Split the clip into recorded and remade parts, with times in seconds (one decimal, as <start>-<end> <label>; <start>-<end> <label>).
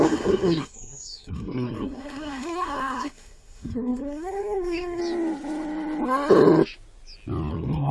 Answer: 0.0-5.0 remade; 5.0-7.5 recorded; 7.5-7.9 remade